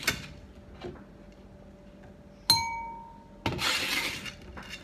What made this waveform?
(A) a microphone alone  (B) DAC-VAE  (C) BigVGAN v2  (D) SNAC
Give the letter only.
A